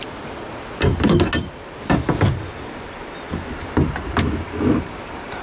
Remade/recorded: recorded